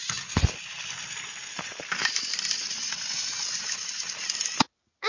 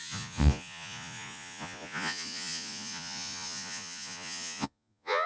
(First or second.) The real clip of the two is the first